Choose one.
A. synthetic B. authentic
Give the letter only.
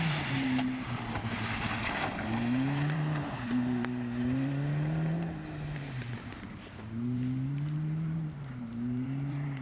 A